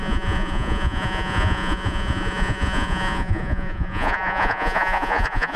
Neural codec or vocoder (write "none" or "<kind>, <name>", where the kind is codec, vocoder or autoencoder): vocoder, Vocos